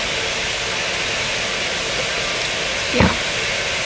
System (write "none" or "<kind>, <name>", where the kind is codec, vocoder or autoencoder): none